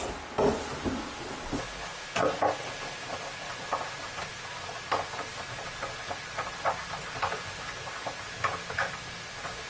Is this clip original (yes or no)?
yes